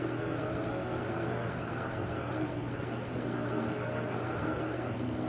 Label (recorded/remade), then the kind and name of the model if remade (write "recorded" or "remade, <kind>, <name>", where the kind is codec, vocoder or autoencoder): remade, codec, SNAC